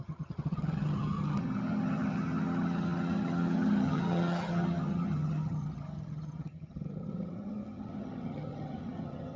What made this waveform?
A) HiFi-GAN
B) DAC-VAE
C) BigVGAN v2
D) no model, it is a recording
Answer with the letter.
A